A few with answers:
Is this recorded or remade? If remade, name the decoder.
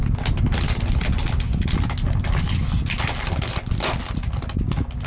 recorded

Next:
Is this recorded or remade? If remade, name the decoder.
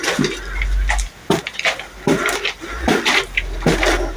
recorded